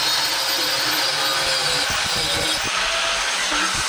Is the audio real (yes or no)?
yes